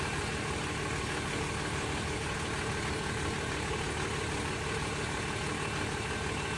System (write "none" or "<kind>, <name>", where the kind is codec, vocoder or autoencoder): none